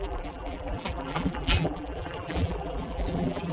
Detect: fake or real fake